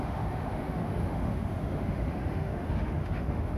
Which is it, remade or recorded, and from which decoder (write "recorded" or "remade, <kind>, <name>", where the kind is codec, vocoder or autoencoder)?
remade, autoencoder, DAC-VAE